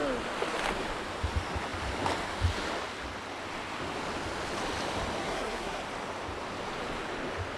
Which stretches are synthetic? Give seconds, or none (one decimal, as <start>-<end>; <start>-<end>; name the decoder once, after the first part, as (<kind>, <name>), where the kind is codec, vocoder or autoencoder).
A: 5.2-5.8 (codec, SNAC)